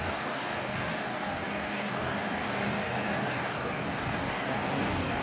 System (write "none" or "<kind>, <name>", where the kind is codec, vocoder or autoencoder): codec, DAC